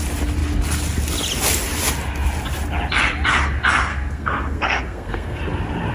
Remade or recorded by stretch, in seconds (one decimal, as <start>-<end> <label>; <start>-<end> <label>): 0.0-3.9 recorded; 3.9-5.4 remade; 5.4-5.9 recorded